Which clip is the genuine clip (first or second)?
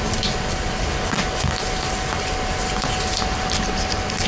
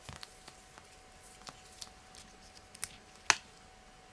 second